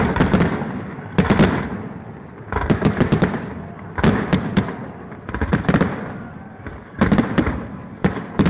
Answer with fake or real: real